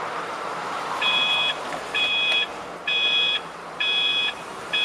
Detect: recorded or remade remade